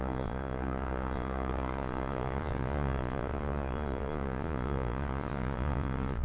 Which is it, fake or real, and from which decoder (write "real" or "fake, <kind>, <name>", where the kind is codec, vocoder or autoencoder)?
fake, vocoder, Vocos